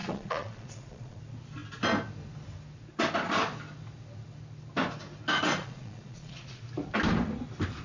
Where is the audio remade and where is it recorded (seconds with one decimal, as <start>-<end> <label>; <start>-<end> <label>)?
0.0-1.2 remade; 1.2-5.6 recorded; 5.6-6.6 remade; 6.6-7.8 recorded